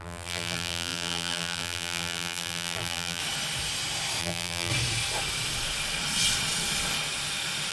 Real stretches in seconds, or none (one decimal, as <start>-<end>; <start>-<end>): 3.2-4.2; 4.7-7.7